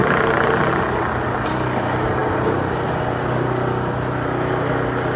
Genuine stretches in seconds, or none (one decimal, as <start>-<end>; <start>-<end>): 0.0-5.2